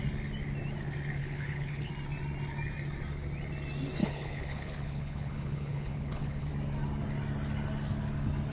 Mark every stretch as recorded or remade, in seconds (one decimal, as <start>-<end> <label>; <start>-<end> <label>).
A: 0.0-1.2 recorded; 1.2-1.9 remade; 1.9-4.0 recorded; 4.0-6.5 remade; 6.5-8.5 recorded